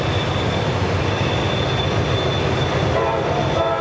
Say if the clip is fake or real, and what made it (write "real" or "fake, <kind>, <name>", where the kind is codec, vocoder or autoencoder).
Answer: real